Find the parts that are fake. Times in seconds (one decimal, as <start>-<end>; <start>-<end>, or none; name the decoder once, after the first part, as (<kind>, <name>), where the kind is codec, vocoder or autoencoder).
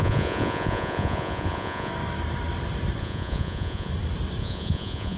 0.0-1.9 (vocoder, Vocos); 3.0-3.9; 4.4-5.2